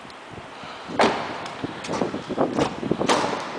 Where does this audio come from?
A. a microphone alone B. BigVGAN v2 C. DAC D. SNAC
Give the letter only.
A